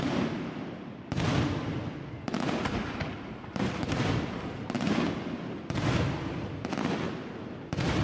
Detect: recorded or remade recorded